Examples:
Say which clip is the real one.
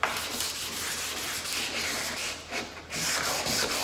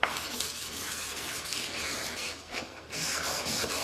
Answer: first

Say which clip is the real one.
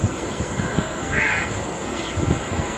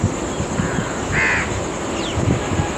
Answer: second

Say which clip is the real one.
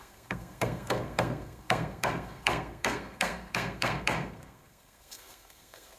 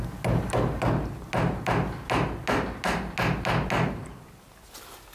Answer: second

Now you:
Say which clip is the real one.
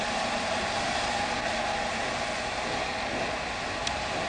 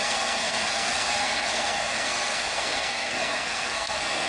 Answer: first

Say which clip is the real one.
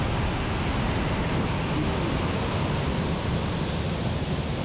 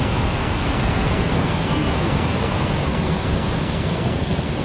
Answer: first